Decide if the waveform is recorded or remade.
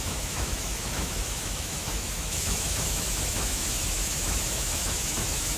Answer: remade